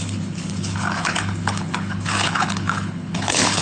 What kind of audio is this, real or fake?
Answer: fake